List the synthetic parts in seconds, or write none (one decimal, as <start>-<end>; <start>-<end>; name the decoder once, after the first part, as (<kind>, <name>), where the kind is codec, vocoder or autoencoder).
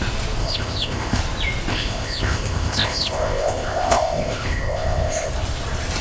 0.4-1.2 (codec, ZipCodec); 1.7-5.3